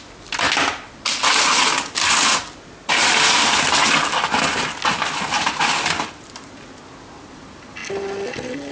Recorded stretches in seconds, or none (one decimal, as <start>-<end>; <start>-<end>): 0.0-8.7